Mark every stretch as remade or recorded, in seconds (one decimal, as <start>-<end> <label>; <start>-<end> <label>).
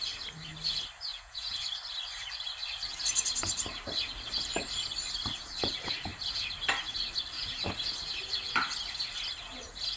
0.0-1.1 recorded; 1.1-1.6 remade; 1.6-10.0 recorded